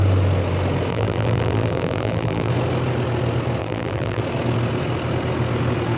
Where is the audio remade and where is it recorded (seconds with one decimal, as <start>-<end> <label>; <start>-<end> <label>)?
0.0-0.9 recorded; 0.9-2.5 remade; 2.5-3.6 recorded; 3.6-4.2 remade; 4.2-6.0 recorded